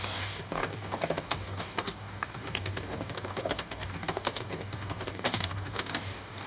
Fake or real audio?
fake